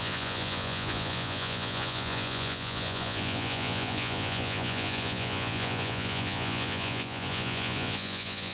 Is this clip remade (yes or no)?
yes